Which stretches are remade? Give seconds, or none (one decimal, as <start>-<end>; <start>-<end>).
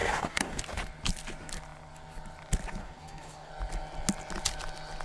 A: 0.0-0.6; 2.8-3.5